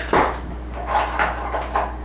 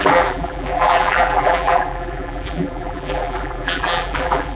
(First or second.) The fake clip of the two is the second